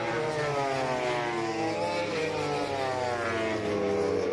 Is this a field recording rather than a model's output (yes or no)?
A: yes